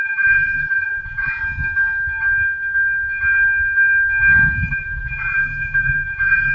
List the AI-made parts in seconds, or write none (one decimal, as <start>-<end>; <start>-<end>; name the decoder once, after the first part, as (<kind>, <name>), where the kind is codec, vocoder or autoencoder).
0.0-1.4 (vocoder, BigVGAN v2); 4.7-6.5